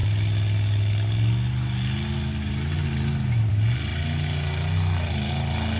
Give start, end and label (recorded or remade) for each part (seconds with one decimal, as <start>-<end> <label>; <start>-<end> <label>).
0.0-5.8 recorded